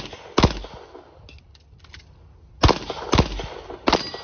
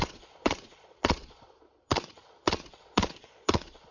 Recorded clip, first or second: first